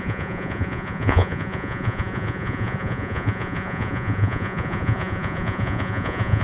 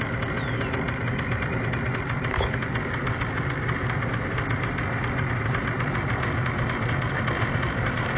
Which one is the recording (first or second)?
second